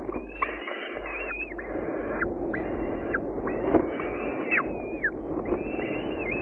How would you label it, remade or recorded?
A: recorded